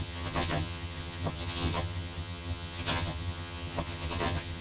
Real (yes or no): no